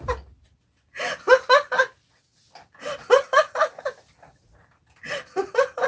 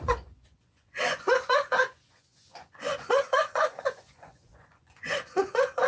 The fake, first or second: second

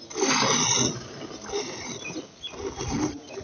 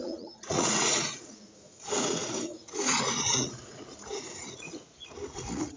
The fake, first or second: second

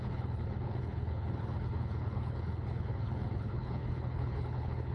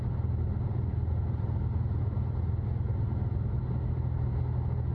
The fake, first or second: first